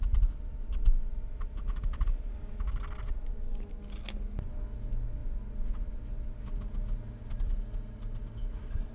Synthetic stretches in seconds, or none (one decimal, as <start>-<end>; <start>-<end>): none